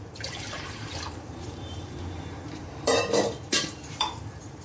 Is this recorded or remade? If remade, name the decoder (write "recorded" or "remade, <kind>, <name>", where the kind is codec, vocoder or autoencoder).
remade, vocoder, BigVGAN v2